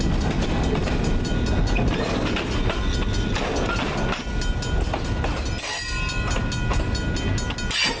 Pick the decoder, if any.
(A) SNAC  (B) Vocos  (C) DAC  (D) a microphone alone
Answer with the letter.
D